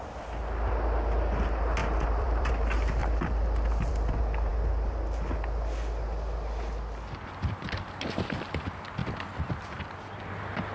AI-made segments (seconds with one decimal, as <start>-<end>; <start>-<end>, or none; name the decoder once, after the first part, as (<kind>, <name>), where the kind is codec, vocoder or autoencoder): 1.8-2.5 (vocoder, BigVGAN v2); 3.0-3.9